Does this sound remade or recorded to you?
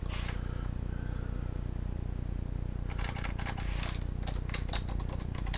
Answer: recorded